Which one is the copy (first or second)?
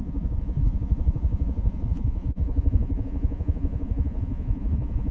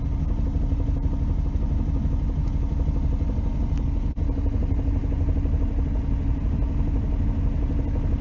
first